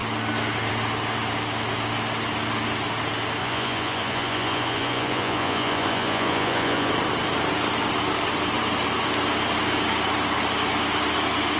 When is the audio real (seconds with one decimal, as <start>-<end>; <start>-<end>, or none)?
0.0-3.4; 6.9-11.6